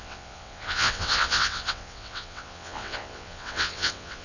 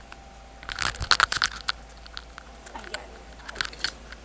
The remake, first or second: first